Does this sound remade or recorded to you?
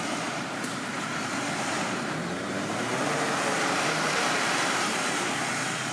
remade